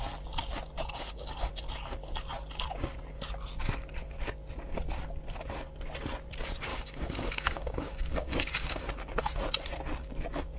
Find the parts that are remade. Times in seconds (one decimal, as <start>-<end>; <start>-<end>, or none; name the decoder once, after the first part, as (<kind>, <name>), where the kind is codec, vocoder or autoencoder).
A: 0.8-1.5 (codec, DAC); 6.7-8.8